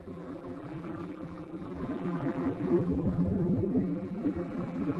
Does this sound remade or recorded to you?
remade